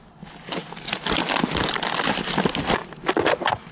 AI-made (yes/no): no